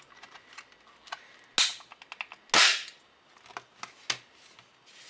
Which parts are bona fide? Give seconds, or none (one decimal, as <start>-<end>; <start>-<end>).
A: 0.0-5.1

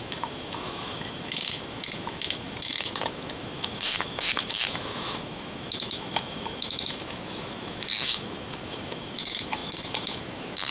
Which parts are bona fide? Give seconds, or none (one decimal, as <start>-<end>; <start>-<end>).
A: none

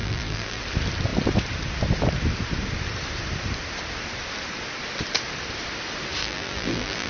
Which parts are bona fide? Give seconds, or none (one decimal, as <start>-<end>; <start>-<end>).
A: 0.6-6.2

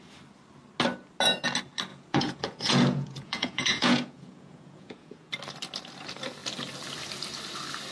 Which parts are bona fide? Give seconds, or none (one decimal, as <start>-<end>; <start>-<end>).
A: 0.0-1.9; 5.3-7.9

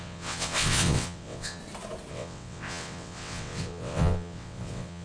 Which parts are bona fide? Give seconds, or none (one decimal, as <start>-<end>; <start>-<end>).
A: 1.6-2.1